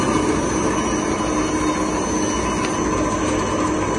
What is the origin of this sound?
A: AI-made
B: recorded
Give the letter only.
B